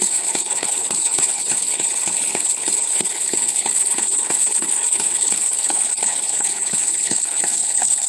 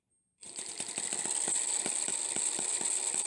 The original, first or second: second